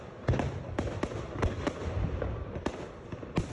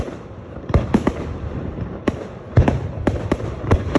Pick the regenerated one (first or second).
second